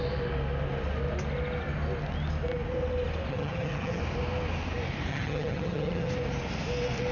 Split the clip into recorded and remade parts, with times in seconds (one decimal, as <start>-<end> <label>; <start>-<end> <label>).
0.0-3.3 recorded; 3.3-4.0 remade; 4.0-5.1 recorded; 5.1-6.1 remade; 6.1-7.1 recorded